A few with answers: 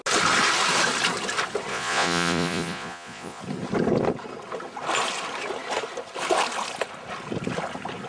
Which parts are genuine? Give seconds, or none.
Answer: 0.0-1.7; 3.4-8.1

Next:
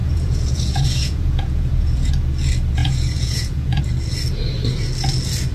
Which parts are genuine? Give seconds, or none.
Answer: 2.1-2.8; 3.8-5.5

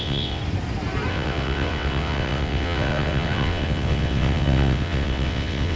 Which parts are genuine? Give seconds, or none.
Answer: 0.4-1.1

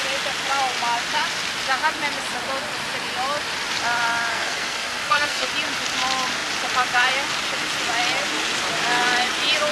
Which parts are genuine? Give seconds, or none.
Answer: 0.0-4.3; 5.5-9.7

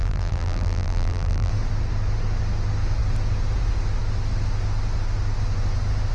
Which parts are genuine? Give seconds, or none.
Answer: 1.5-6.1

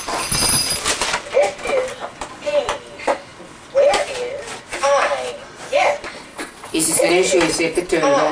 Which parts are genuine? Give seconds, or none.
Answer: 0.0-6.3; 7.1-8.3

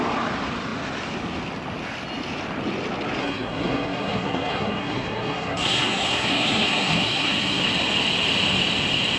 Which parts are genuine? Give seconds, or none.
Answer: 0.0-3.2; 7.6-9.2

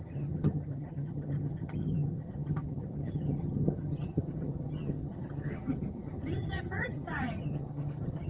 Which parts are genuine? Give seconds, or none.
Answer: none